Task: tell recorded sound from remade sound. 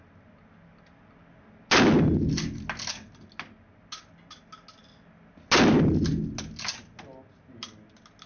recorded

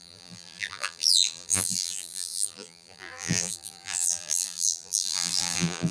remade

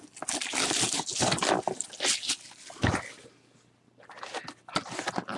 recorded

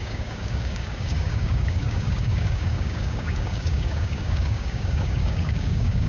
remade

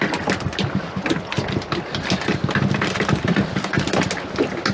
recorded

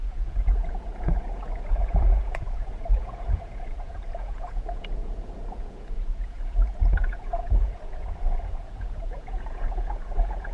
remade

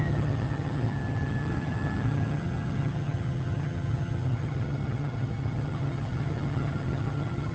remade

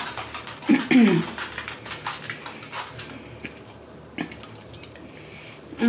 recorded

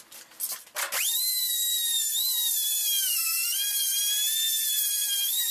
recorded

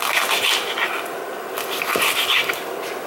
recorded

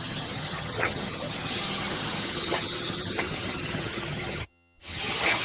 remade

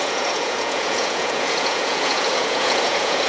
remade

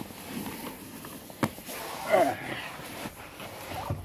recorded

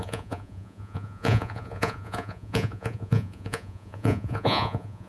remade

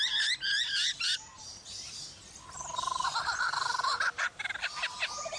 recorded